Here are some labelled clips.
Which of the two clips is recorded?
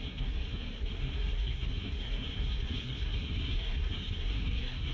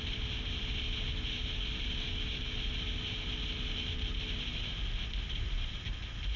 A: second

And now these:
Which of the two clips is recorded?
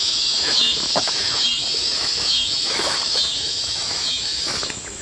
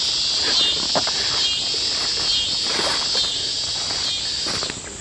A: second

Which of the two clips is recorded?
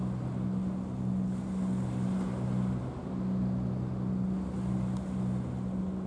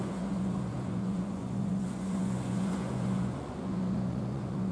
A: first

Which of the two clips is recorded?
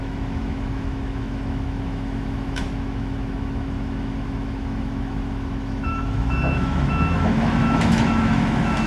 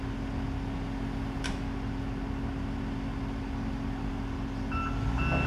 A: second